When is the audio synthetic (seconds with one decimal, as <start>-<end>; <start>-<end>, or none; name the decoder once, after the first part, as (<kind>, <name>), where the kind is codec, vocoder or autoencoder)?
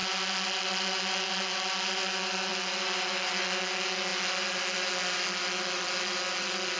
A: none